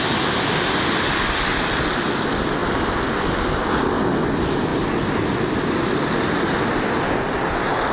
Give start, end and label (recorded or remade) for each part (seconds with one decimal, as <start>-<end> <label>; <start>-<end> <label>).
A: 0.0-4.7 recorded; 4.7-5.3 remade; 5.3-7.9 recorded